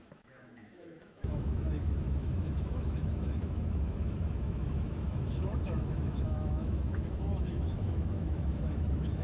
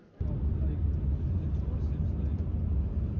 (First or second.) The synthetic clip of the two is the first